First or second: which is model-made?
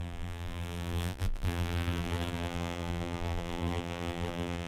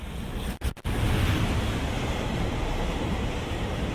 first